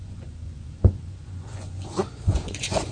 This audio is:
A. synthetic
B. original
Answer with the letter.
A